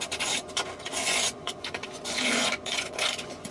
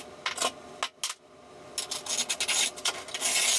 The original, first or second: second